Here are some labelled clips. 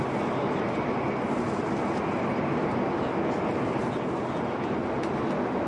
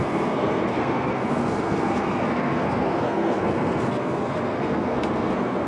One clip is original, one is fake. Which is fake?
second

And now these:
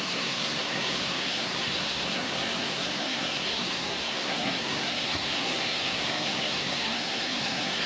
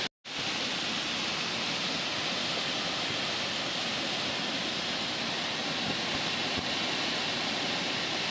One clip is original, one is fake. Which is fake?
first